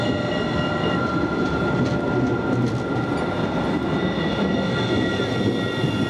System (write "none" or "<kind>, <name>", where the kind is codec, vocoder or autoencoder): none